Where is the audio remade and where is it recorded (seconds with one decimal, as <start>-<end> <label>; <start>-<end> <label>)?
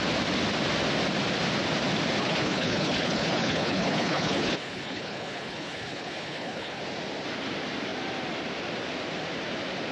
0.0-2.2 recorded; 2.2-6.8 remade; 6.8-9.9 recorded